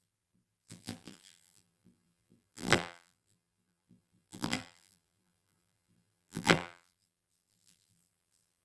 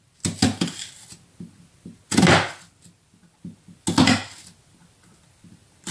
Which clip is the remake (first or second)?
first